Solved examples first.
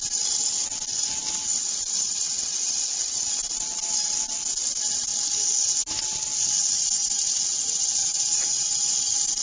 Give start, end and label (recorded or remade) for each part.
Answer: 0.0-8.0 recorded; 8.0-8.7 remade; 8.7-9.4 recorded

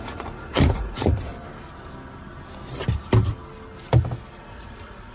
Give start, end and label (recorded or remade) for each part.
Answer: 0.0-1.3 remade; 1.3-4.4 recorded; 4.4-5.1 remade